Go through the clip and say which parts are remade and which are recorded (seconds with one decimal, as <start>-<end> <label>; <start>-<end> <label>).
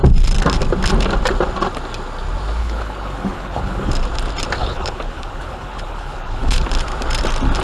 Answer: 0.0-2.6 recorded; 2.6-3.9 remade; 3.9-4.6 recorded; 4.6-6.6 remade; 6.6-7.6 recorded